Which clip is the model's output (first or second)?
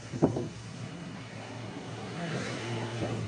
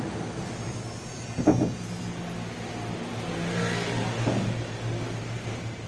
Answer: first